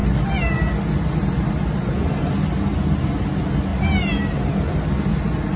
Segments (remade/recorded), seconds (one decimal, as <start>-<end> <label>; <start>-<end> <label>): 0.0-5.6 recorded